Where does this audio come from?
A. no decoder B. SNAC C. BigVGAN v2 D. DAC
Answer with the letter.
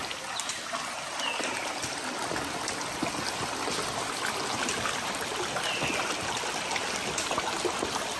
A